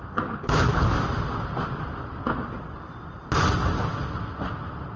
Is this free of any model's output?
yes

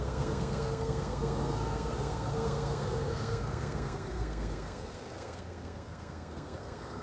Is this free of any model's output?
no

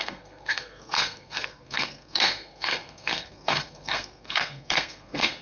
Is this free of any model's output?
no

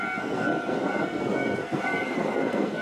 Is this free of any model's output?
no